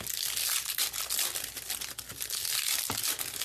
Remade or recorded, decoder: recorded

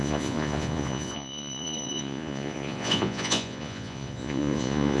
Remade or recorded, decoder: remade, vocoder, Vocos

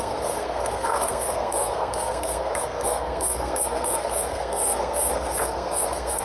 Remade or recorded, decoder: remade, codec, SNAC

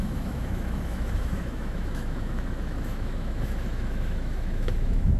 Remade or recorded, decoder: remade, autoencoder, DAC-VAE